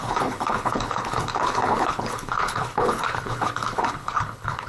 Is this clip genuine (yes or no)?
no